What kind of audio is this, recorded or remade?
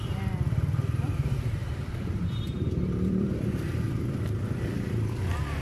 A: remade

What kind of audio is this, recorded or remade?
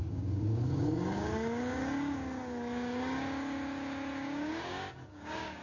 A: remade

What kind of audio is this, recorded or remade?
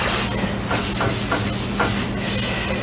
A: recorded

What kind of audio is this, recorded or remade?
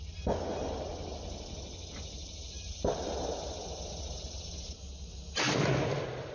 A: recorded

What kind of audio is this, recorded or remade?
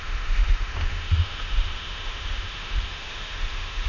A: remade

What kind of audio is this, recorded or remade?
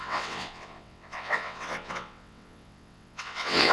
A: remade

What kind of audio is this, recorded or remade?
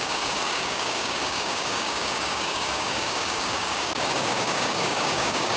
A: remade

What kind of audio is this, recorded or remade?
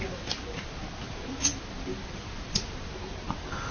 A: recorded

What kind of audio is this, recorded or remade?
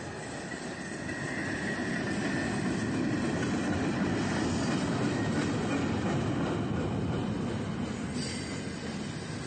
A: recorded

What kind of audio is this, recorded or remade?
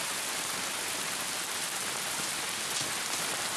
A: recorded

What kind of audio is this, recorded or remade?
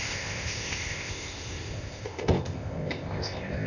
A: remade